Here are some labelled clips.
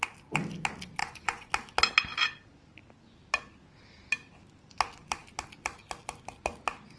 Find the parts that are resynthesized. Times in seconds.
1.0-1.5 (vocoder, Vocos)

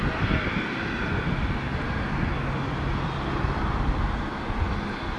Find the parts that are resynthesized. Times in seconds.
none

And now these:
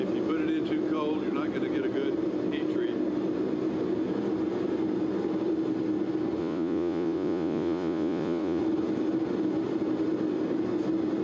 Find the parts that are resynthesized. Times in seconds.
6.4-8.6 (vocoder, Vocos)

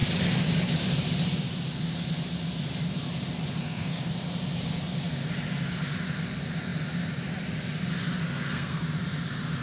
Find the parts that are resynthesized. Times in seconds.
3.6-4.1 (codec, SNAC); 8.2-8.8

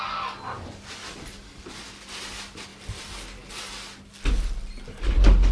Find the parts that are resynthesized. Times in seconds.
none